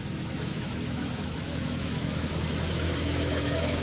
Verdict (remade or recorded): remade